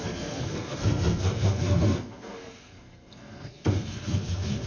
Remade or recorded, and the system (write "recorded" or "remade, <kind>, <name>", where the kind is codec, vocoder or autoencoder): remade, codec, SNAC